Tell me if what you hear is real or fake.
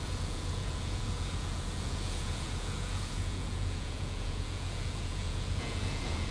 fake